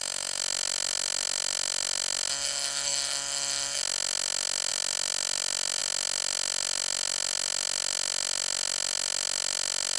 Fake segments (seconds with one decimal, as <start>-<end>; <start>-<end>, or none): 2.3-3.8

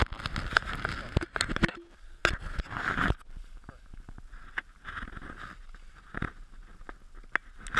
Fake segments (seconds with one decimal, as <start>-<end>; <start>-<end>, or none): none

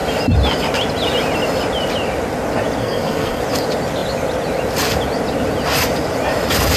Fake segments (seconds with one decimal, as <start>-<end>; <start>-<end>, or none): 2.8-3.4

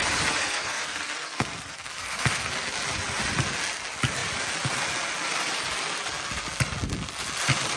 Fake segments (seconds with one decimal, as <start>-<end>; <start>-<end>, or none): 0.4-2.5